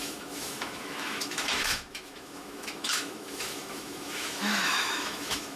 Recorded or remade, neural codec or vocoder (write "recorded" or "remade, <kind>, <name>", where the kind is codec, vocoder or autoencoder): remade, autoencoder, DAC-VAE